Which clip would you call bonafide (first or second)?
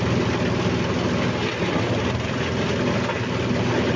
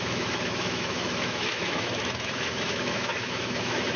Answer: first